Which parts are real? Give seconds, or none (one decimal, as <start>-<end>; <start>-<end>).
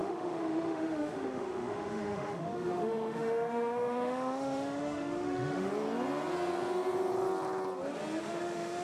5.7-8.2